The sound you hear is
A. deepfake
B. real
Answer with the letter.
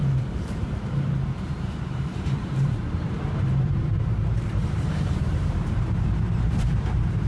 A